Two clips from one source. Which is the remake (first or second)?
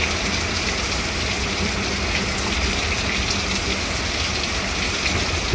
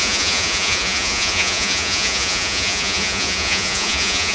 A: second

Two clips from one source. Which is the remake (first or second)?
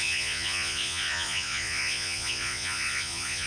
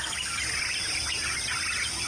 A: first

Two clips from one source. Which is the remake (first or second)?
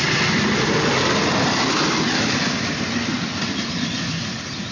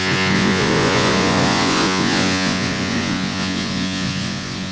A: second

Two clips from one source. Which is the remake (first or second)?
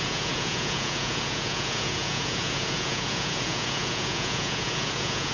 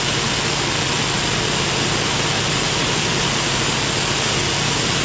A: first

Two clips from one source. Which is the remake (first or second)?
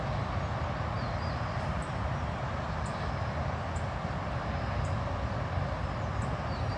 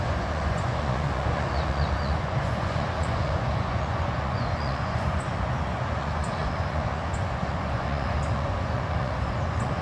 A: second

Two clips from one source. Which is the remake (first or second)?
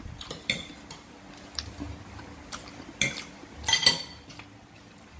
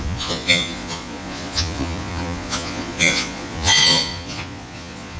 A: second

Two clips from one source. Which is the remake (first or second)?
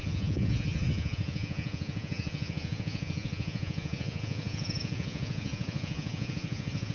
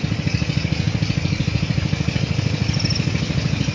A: first